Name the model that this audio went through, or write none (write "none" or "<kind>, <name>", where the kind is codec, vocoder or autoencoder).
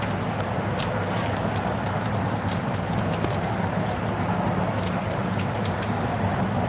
none